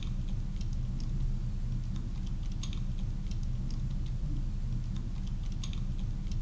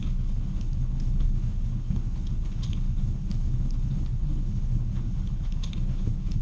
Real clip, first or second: first